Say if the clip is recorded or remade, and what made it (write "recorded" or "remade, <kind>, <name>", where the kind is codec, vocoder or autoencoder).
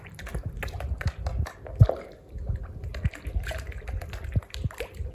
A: recorded